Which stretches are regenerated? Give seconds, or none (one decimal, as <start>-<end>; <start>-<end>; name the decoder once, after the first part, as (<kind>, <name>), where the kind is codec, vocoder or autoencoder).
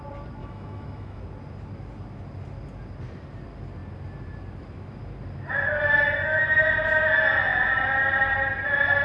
0.4-1.2 (autoencoder, DAC-VAE)